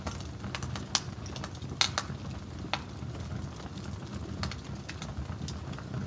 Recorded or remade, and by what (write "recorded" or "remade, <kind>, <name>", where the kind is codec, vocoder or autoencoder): recorded